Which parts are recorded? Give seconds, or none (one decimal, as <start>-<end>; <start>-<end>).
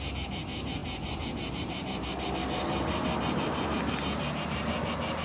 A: 0.0-5.2